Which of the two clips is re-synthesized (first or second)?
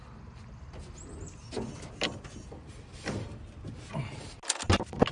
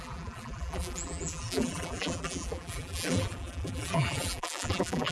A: second